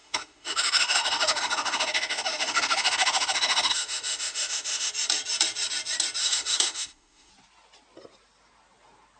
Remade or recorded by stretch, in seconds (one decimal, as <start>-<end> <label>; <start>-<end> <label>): 0.0-4.9 remade; 4.9-6.2 recorded; 6.2-7.3 remade; 7.3-9.2 recorded